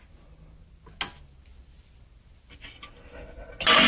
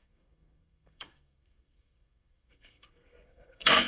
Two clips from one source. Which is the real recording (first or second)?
first